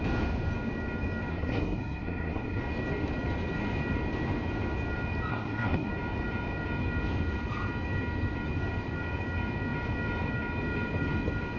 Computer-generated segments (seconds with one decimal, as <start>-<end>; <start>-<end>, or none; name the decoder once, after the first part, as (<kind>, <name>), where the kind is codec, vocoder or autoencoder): 1.3-2.6 (codec, SNAC); 5.3-5.9